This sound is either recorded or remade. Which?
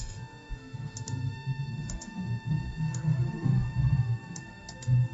remade